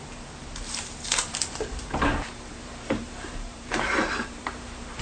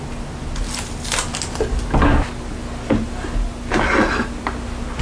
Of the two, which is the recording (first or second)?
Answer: second